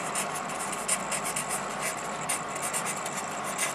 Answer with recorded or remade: recorded